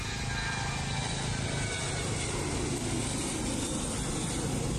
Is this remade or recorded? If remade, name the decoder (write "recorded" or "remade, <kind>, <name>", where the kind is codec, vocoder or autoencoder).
recorded